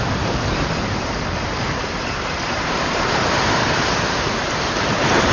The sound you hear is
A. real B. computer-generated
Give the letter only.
B